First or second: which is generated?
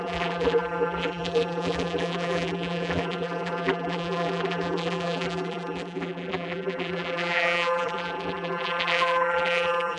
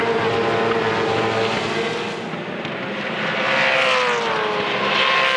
first